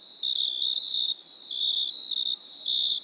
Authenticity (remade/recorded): recorded